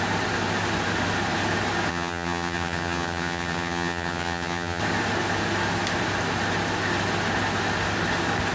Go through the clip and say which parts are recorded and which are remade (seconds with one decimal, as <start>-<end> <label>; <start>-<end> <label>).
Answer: 0.0-1.9 recorded; 1.9-4.8 remade; 4.8-8.5 recorded